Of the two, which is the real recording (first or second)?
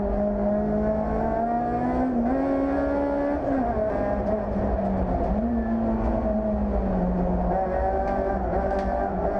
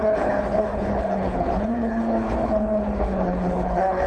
first